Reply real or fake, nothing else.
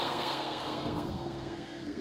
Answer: fake